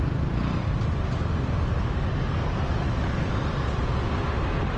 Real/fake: real